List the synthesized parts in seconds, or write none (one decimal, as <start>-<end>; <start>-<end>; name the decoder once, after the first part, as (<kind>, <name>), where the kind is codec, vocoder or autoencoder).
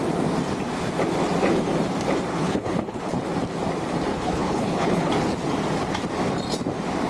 2.3-3.2 (codec, HILCodec); 4.1-5.1